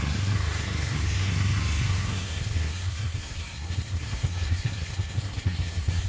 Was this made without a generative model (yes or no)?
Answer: no